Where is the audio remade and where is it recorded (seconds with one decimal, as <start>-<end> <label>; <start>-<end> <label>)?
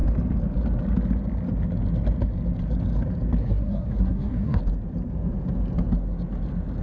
0.0-3.4 recorded; 3.4-4.6 remade; 4.6-6.8 recorded